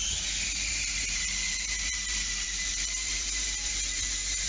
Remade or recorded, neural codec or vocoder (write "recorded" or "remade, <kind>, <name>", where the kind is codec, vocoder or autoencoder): remade, vocoder, BigVGAN v2